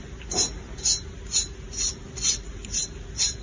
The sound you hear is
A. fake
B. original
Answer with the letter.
B